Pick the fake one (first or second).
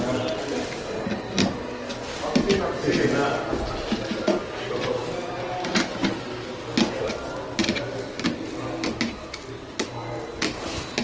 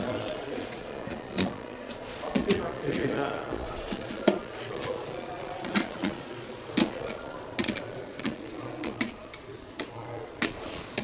second